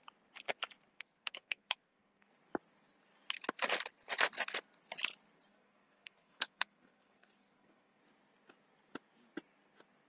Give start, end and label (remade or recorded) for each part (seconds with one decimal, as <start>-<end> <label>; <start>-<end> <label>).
0.0-0.9 recorded; 0.9-2.3 remade; 2.3-5.5 recorded; 5.5-8.0 remade; 8.0-10.1 recorded